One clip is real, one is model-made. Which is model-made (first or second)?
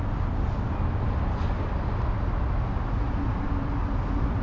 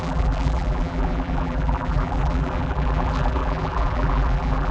second